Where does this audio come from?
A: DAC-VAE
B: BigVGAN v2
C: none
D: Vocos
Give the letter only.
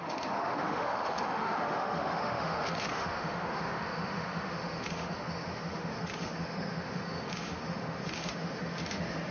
A